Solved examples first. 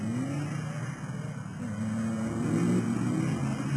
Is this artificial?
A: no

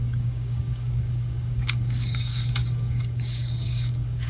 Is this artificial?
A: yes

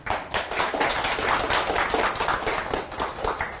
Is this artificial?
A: no